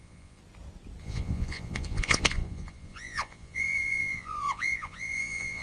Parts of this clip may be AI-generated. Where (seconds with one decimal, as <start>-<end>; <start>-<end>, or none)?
0.0-0.4; 1.0-5.6